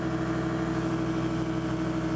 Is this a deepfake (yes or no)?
no